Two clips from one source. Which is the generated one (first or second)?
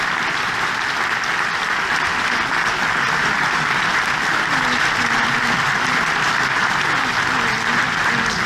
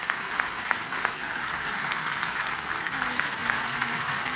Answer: second